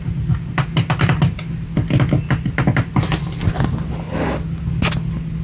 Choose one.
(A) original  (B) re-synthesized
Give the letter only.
A